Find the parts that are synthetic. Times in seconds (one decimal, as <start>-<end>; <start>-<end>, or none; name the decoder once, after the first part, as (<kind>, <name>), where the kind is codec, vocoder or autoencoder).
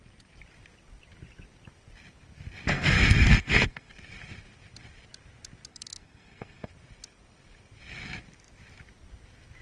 2.7-3.9 (codec, SNAC); 5.7-6.7